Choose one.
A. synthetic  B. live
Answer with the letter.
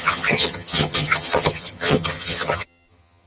A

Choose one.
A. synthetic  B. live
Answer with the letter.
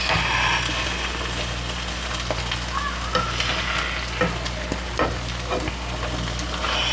B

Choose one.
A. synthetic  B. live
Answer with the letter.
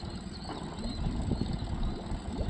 B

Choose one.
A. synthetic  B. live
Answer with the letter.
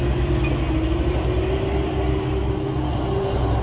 B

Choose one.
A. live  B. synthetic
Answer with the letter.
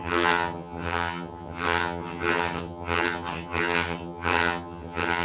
B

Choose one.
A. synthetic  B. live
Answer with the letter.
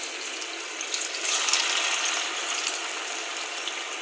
B